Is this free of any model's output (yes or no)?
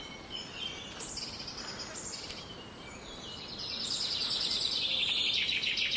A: yes